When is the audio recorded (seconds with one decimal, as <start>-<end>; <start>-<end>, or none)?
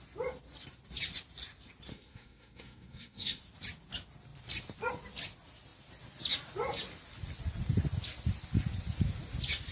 0.0-1.9; 3.4-9.7